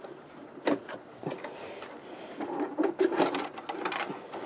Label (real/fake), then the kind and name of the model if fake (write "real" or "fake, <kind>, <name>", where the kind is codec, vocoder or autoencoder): real